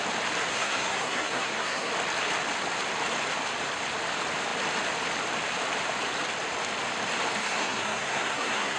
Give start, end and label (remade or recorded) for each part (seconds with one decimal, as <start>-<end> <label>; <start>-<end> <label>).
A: 0.0-0.5 recorded; 0.5-1.9 remade; 1.9-7.4 recorded; 7.4-8.8 remade